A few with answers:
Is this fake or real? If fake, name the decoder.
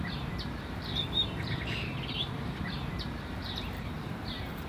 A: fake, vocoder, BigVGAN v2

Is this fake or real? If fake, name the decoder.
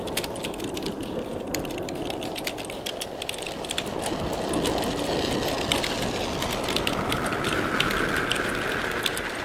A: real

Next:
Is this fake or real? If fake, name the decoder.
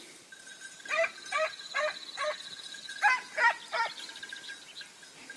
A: real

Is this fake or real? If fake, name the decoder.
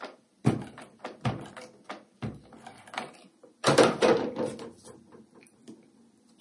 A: fake, vocoder, BigVGAN v2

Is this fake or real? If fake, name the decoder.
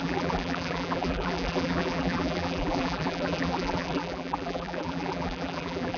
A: fake, vocoder, BigVGAN v2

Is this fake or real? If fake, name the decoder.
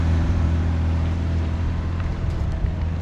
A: fake, vocoder, BigVGAN v2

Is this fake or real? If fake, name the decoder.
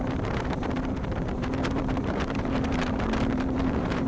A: fake, vocoder, BigVGAN v2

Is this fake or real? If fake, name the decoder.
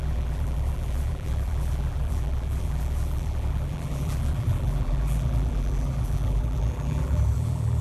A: fake, vocoder, BigVGAN v2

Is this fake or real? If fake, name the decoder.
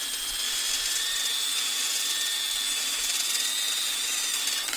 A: real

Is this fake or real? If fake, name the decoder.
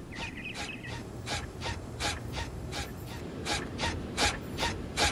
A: fake, vocoder, BigVGAN v2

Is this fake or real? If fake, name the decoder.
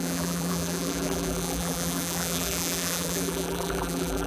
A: fake, vocoder, BigVGAN v2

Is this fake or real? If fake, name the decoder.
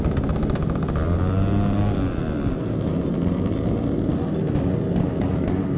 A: real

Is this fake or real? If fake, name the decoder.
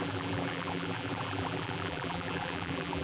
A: fake, vocoder, BigVGAN v2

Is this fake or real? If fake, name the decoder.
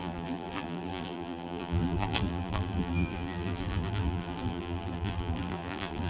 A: fake, vocoder, BigVGAN v2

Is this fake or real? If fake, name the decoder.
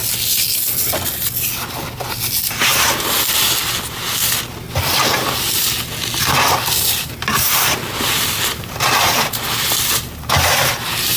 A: real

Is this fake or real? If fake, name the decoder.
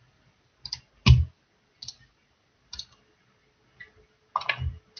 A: real